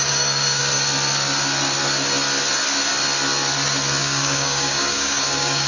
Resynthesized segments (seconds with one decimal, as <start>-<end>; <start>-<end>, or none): 0.0-0.6; 4.0-5.7